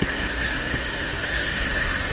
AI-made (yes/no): yes